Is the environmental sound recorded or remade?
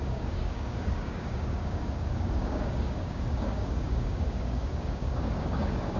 remade